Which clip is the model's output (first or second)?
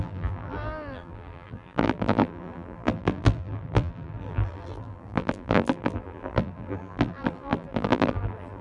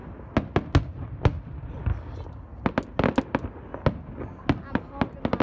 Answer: first